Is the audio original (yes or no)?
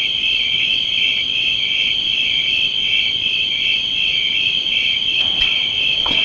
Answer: no